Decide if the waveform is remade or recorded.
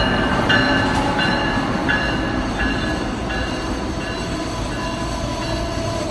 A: recorded